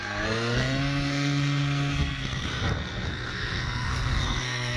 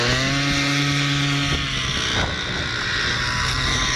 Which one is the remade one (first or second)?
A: first